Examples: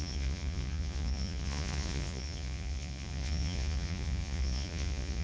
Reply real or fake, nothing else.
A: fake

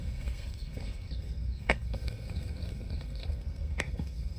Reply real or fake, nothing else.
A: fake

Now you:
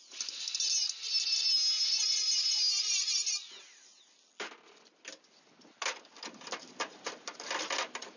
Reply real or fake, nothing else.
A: real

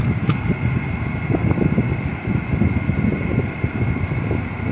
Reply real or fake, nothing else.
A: real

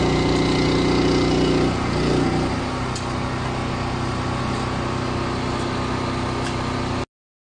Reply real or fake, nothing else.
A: real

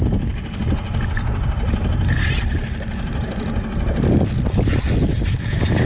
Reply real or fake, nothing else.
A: real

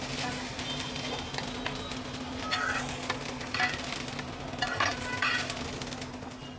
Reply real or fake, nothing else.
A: real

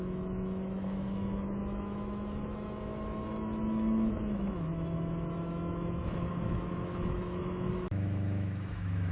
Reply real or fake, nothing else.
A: fake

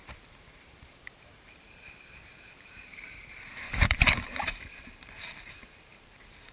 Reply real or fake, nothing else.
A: fake